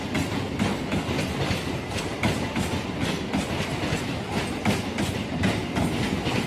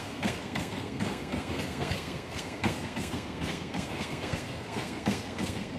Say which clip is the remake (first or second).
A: second